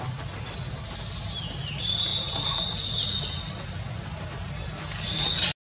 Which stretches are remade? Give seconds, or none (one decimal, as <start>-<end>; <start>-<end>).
none